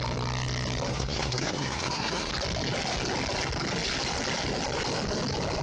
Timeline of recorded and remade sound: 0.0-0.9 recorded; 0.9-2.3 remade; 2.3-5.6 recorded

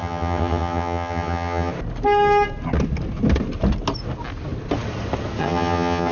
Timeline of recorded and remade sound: 0.0-1.7 remade; 1.7-5.4 recorded; 5.4-6.1 remade

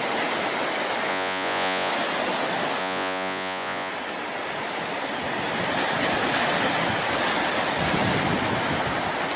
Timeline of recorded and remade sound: 0.0-1.1 recorded; 1.1-1.9 remade; 1.9-2.8 recorded; 2.8-3.9 remade; 3.9-9.4 recorded

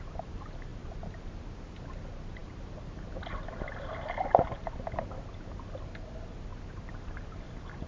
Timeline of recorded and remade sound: 0.0-6.5 recorded; 6.5-7.2 remade; 7.2-7.9 recorded

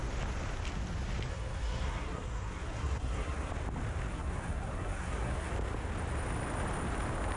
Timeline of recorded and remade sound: 0.0-1.3 recorded; 1.3-3.5 remade; 3.5-4.1 recorded; 4.1-5.5 remade; 5.5-7.4 recorded